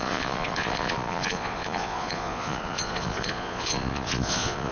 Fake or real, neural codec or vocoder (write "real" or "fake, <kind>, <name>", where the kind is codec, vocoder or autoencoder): fake, vocoder, Vocos